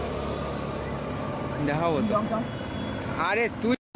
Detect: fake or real real